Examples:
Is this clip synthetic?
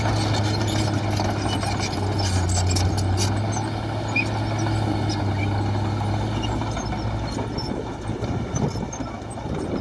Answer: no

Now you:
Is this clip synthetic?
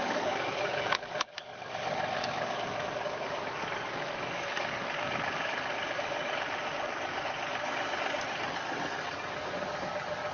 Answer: yes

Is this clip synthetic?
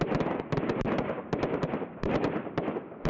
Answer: no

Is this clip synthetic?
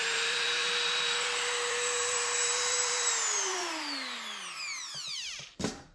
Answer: yes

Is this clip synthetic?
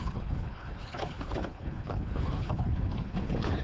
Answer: yes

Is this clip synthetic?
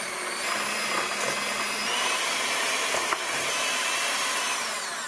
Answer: no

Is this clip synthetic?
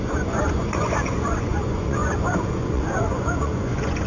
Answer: yes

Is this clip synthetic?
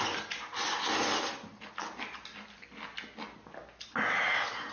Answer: no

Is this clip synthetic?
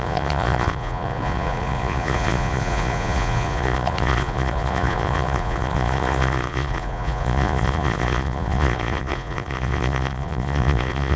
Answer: yes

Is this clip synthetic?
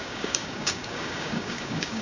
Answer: yes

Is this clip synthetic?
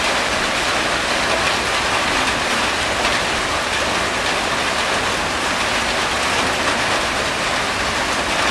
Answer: no